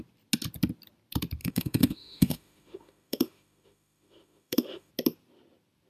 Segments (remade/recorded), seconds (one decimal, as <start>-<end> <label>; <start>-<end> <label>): 0.0-1.4 recorded; 1.4-4.9 remade; 4.9-5.9 recorded